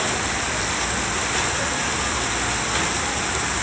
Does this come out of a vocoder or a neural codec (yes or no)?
no